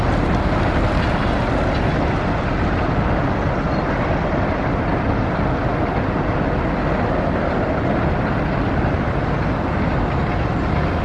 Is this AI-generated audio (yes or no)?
no